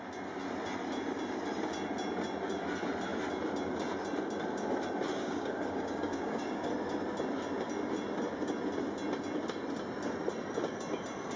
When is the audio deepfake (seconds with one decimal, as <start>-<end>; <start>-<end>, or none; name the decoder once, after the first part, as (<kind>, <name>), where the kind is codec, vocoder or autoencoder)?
5.2-6.7 (codec, DAC)